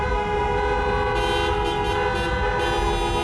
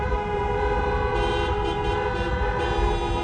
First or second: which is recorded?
first